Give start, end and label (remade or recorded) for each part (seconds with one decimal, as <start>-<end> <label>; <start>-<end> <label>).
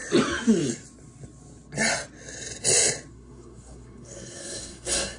0.0-3.1 recorded; 3.1-5.2 remade